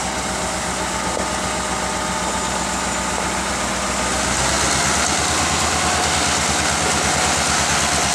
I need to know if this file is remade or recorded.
recorded